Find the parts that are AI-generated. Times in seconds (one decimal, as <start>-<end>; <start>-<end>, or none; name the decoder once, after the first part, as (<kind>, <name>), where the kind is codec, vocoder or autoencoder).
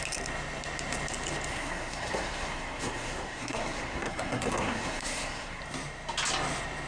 1.5-5.6 (codec, SNAC)